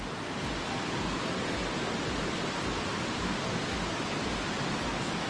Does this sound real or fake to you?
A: real